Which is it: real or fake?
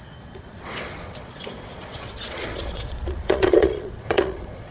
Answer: fake